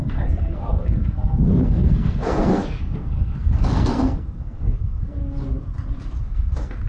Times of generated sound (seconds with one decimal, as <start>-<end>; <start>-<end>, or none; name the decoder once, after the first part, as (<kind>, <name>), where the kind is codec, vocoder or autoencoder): 0.0-5.2 (codec, SNAC); 6.2-6.9